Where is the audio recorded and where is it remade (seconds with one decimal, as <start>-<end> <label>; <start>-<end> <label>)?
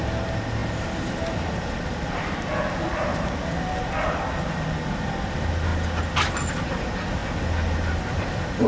0.0-8.7 recorded